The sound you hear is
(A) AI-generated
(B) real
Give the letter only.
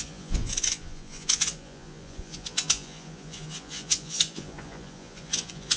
A